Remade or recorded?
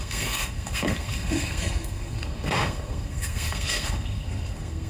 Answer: remade